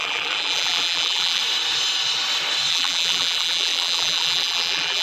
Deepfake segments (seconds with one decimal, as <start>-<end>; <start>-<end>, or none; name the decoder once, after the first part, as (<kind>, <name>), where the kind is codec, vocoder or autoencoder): 0.0-1.4 (vocoder, BigVGAN v2); 2.7-5.0